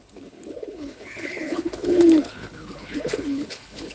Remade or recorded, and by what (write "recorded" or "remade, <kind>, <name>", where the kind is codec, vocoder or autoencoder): remade, codec, HILCodec